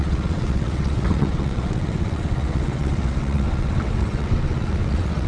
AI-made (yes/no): yes